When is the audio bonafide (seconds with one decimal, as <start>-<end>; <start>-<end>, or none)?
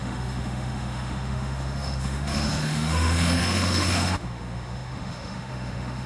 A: none